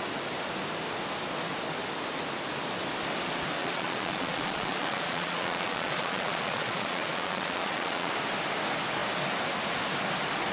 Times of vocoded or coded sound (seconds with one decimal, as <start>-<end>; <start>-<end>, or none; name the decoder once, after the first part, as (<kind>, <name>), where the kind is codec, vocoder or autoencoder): 3.6-8.1 (vocoder, Vocos)